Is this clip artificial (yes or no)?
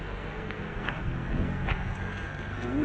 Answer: yes